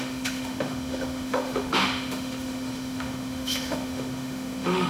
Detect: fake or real fake